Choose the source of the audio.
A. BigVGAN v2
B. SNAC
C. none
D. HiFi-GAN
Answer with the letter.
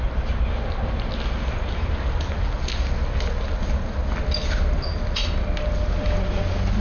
C